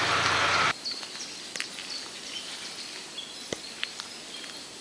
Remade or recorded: recorded